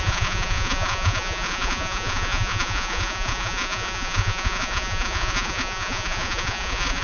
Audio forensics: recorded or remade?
remade